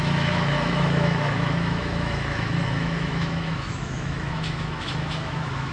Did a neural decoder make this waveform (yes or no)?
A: yes